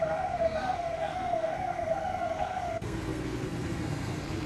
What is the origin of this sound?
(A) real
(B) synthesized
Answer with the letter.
B